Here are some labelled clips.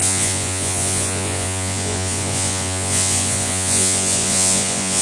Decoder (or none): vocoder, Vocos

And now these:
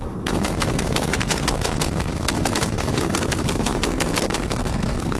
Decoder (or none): codec, SNAC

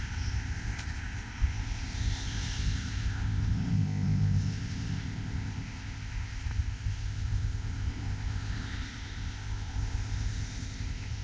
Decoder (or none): codec, ZipCodec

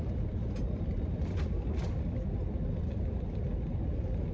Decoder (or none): none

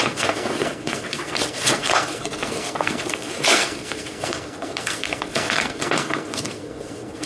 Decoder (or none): codec, SNAC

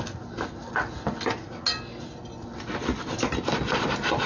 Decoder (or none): none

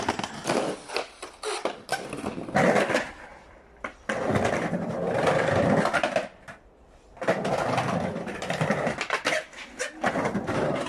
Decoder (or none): vocoder, BigVGAN v2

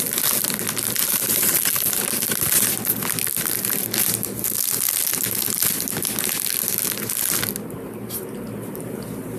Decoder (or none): none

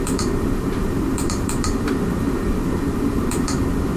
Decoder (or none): vocoder, BigVGAN v2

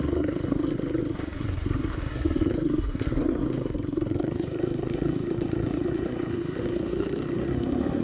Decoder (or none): codec, SNAC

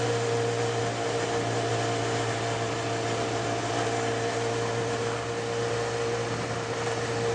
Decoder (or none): none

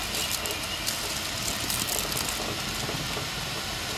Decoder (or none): none